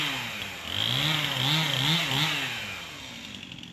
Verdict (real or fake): real